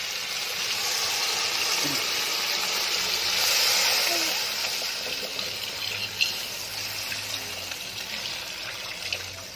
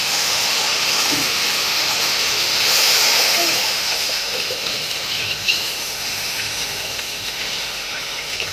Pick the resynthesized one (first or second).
second